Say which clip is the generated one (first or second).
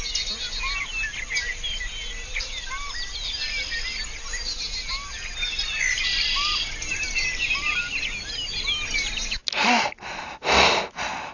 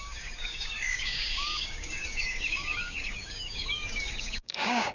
second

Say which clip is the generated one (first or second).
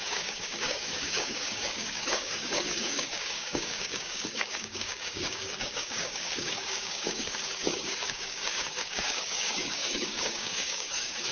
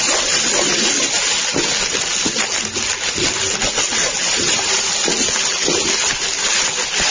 first